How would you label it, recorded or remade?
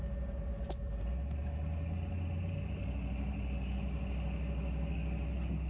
recorded